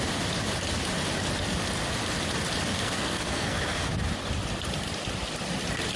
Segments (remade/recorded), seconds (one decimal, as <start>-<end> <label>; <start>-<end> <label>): 0.0-2.7 recorded; 2.7-3.9 remade; 3.9-6.0 recorded